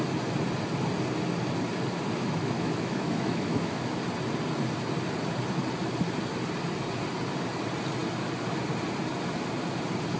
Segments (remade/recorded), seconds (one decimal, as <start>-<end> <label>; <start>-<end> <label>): 0.0-2.4 recorded; 2.4-4.0 remade; 4.0-10.2 recorded